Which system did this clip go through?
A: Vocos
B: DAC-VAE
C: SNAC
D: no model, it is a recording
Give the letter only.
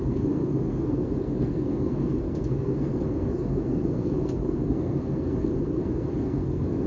C